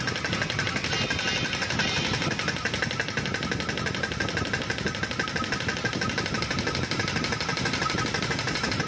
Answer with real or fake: real